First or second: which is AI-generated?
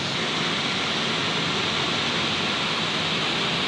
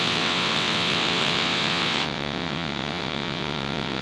second